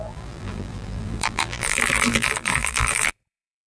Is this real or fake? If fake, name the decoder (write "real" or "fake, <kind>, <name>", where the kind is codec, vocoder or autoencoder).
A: fake, vocoder, BigVGAN v2